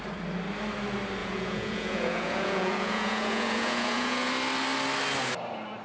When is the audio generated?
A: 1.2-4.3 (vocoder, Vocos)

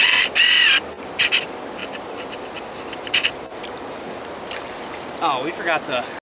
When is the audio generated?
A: none

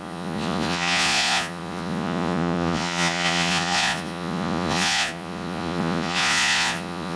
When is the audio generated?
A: 0.0-7.2 (vocoder, Vocos)

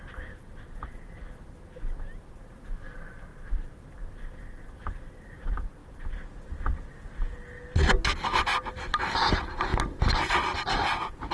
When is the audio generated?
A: none